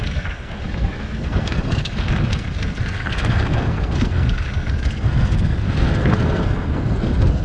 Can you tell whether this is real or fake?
fake